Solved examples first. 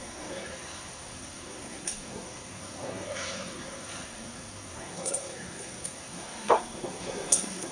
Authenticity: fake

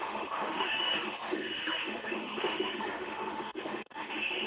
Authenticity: fake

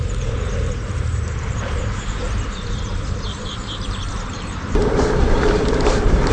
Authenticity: fake